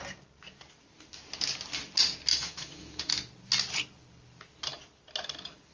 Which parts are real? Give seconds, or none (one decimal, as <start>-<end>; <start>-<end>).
0.0-2.3; 3.1-5.7